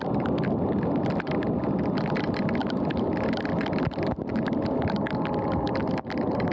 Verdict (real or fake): real